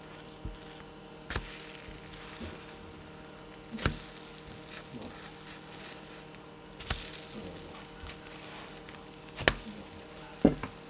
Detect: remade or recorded recorded